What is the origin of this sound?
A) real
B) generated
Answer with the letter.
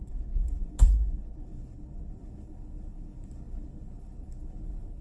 B